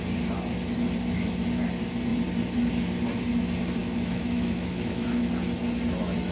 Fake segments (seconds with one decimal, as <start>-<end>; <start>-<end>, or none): 3.8-5.3